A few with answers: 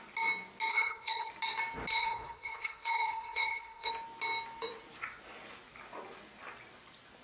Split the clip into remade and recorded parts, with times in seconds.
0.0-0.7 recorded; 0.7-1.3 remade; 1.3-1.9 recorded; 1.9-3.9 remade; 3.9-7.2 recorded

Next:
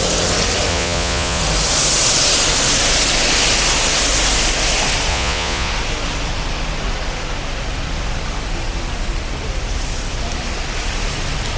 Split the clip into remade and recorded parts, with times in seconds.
0.0-0.7 recorded; 0.7-1.4 remade; 1.4-5.1 recorded; 5.1-5.7 remade; 5.7-11.6 recorded

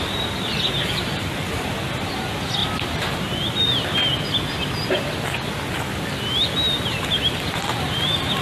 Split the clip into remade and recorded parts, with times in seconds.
0.0-8.4 recorded

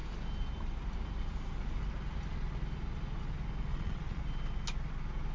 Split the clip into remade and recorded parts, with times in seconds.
0.0-3.7 recorded; 3.7-4.2 remade; 4.2-5.3 recorded

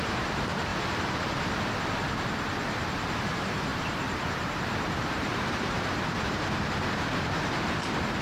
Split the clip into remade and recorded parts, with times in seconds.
0.0-0.7 remade; 0.7-3.2 recorded; 3.2-8.2 remade

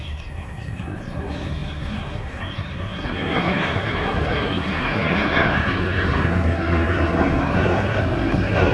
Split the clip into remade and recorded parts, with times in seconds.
0.0-8.7 remade

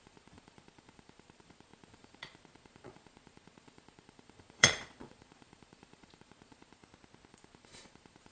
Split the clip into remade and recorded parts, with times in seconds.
0.0-6.8 remade; 6.8-7.3 recorded; 7.3-8.3 remade

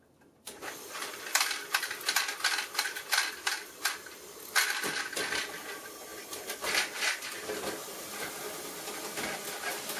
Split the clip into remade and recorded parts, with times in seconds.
0.0-10.0 recorded